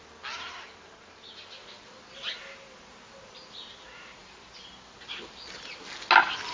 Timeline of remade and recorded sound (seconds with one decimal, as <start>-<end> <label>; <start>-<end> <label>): 0.0-6.5 recorded